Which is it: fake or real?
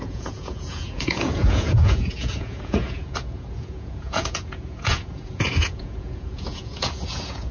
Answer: fake